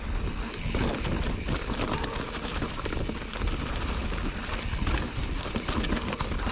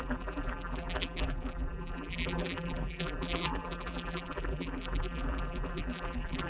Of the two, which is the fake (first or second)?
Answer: second